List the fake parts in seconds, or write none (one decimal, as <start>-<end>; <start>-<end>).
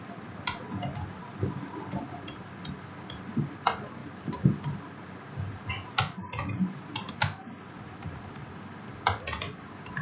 4.0-7.1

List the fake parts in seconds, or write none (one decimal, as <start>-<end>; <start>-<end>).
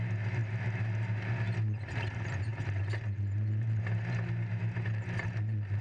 2.5-3.8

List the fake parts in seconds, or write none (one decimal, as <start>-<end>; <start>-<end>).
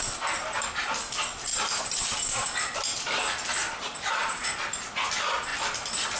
1.5-2.2; 3.6-5.1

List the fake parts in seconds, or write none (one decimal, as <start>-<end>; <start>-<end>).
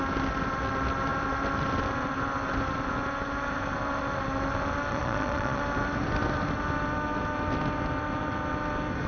4.9-5.6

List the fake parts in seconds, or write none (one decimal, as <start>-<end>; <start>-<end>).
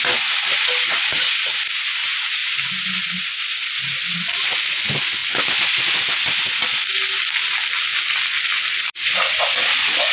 none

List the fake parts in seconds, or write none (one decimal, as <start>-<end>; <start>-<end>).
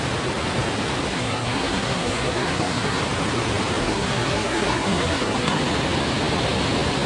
1.1-3.0; 3.8-5.6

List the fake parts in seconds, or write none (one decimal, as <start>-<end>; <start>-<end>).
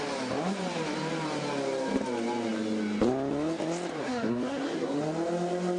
4.0-5.0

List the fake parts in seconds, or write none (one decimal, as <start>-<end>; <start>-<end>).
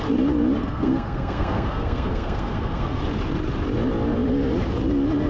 0.6-3.0